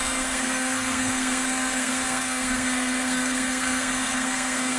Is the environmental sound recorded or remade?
remade